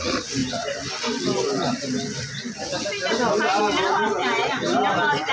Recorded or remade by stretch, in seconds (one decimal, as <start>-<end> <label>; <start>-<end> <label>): 0.0-5.3 recorded